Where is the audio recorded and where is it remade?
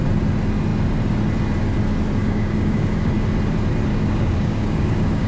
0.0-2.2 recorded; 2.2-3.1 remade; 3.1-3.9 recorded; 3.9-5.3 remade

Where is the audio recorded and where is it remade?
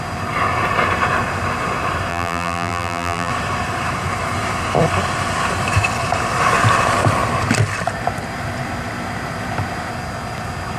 0.0-2.1 recorded; 2.1-3.3 remade; 3.3-10.8 recorded